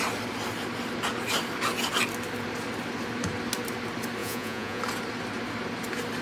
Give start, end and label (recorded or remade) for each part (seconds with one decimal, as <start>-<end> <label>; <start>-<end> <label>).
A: 0.0-4.2 recorded; 4.2-4.8 remade; 4.8-6.2 recorded